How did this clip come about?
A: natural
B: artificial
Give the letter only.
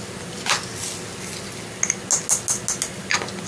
A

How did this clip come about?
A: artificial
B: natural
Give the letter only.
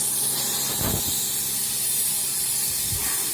B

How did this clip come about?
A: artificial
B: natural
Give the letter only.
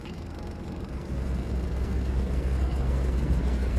A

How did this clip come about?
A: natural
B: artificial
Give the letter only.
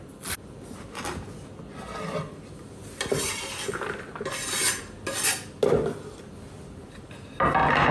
A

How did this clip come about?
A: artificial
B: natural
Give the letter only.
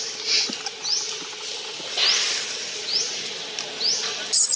B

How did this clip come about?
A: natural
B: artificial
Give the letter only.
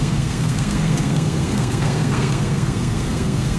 B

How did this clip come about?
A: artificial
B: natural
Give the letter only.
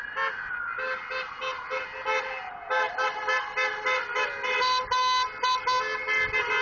B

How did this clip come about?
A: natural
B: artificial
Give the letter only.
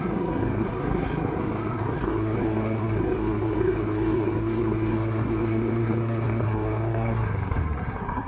B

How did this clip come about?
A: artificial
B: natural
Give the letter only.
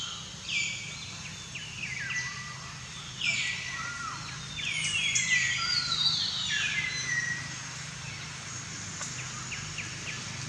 B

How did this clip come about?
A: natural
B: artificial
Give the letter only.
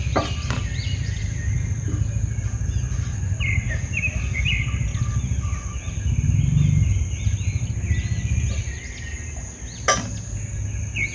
A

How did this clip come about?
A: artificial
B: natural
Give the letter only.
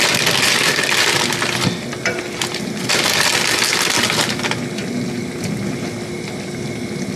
B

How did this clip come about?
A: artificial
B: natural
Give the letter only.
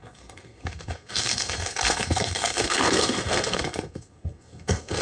A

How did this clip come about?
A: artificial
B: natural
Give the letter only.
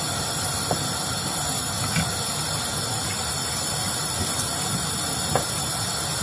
B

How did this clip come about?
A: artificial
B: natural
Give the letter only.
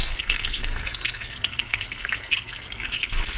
A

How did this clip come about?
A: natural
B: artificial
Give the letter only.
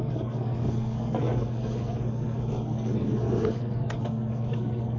B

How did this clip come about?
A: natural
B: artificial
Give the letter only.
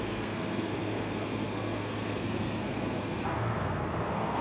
B